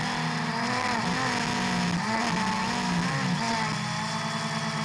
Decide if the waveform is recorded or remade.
recorded